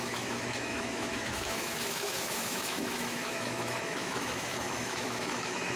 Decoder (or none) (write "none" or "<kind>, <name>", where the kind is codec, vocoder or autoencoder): autoencoder, DAC-VAE